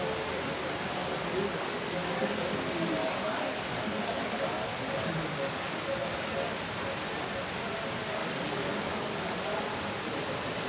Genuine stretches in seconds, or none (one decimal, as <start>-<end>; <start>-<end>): 0.0-1.0; 2.5-3.0; 4.2-4.7; 6.3-8.2; 9.3-10.7